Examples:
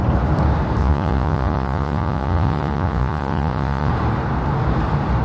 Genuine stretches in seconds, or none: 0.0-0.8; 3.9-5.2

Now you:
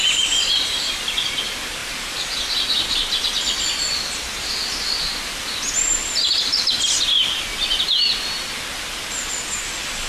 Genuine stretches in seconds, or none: 0.0-10.1

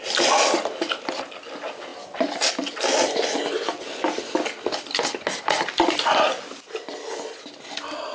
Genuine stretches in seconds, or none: 0.0-8.1

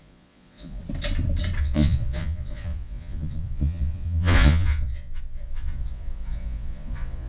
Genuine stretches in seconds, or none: 0.8-1.6

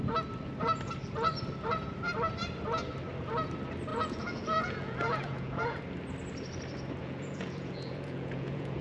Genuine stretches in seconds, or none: 0.0-3.9; 5.8-7.0

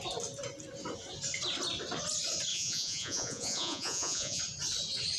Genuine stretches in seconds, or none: 0.0-2.5; 4.4-5.2

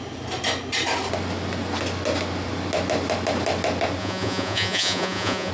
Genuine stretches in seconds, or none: 0.0-4.0

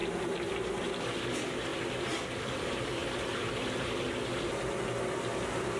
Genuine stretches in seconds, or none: 0.0-5.8